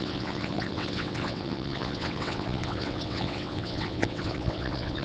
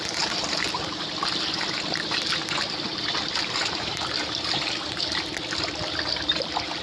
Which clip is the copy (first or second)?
first